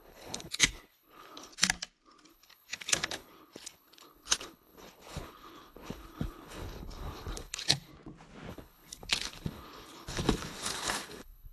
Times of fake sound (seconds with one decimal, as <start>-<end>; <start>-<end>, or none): 0.0-1.5; 2.3-7.9; 8.5-11.5